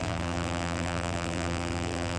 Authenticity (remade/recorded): remade